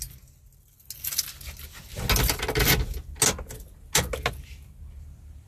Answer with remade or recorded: recorded